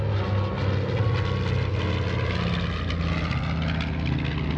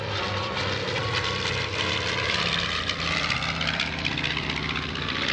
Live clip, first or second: first